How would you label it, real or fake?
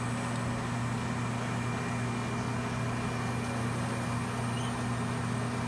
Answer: real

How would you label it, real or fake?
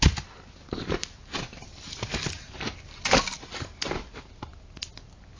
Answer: real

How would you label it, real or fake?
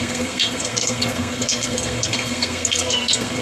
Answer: fake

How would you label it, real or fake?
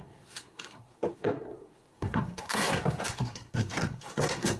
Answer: fake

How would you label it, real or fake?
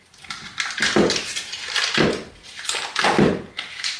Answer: real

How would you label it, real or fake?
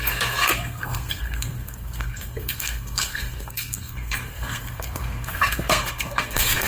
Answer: fake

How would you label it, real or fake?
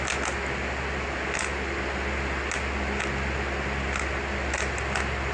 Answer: real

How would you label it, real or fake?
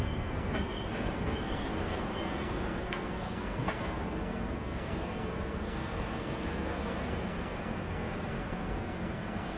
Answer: fake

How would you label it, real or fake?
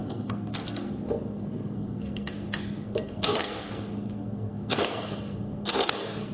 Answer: fake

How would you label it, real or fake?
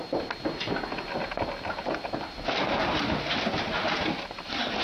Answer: real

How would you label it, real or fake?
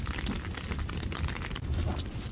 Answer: real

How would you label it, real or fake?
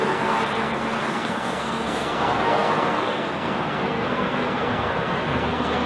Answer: fake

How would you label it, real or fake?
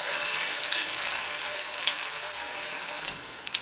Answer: fake